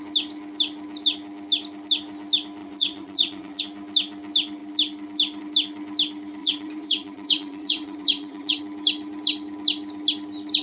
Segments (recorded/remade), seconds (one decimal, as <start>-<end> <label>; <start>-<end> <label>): 0.0-2.6 recorded; 2.6-3.6 remade; 3.6-6.4 recorded; 6.4-8.6 remade; 8.6-10.6 recorded